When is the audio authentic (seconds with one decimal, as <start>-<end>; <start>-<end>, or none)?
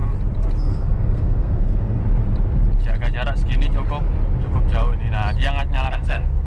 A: 0.0-0.6; 2.0-5.9